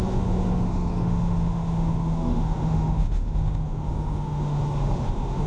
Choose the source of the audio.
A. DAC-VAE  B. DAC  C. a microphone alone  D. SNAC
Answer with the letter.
A